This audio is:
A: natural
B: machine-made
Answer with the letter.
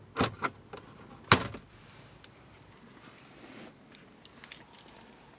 A